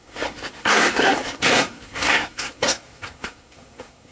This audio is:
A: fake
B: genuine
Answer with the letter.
A